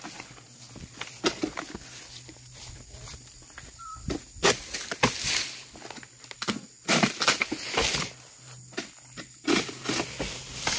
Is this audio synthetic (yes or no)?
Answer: no